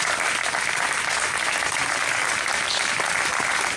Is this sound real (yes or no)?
yes